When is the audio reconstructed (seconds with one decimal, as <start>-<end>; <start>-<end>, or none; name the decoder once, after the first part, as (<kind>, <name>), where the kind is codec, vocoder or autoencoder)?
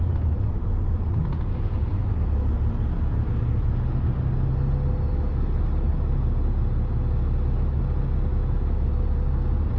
8.3-8.9 (autoencoder, DAC-VAE)